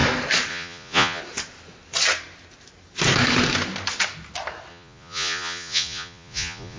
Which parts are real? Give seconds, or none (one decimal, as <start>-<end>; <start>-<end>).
0.0-0.5; 1.2-4.7